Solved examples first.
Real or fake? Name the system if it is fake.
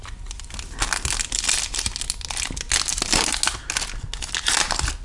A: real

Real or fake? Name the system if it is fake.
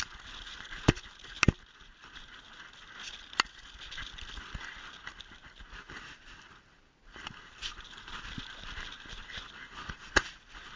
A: real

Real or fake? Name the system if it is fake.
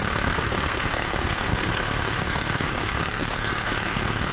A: fake, codec, SNAC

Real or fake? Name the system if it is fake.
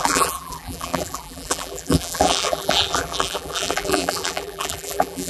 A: fake, vocoder, BigVGAN v2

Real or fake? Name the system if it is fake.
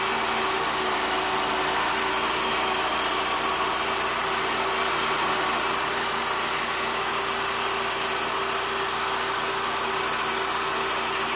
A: real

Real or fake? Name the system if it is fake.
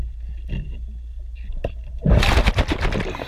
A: real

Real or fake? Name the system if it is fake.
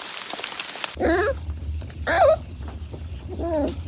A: real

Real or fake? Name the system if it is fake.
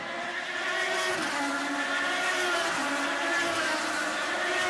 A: real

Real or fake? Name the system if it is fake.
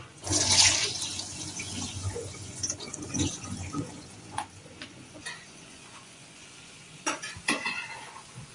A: fake, vocoder, Vocos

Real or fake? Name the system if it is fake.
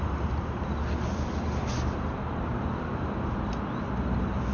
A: real